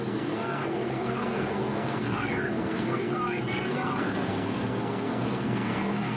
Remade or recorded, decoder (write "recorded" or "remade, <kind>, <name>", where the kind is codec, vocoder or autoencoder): remade, codec, SNAC